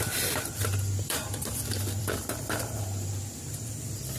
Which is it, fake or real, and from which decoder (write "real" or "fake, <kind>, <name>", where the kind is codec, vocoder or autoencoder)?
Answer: fake, vocoder, BigVGAN v2